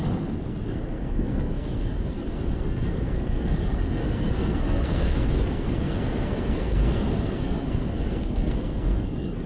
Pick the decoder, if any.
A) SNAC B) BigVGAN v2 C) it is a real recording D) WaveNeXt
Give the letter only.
A